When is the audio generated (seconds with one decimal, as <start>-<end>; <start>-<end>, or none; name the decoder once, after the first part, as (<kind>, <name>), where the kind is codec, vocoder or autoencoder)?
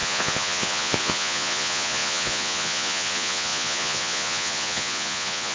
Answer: 0.0-5.5 (vocoder, Vocos)